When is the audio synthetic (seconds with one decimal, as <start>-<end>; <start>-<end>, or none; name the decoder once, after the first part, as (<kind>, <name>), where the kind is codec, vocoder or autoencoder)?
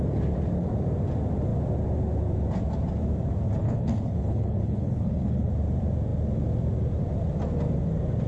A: 3.6-5.5 (codec, HILCodec)